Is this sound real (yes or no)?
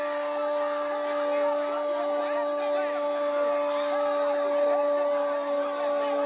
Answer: yes